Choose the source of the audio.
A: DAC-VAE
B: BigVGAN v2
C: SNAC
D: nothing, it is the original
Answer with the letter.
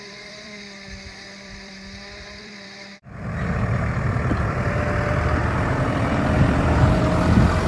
B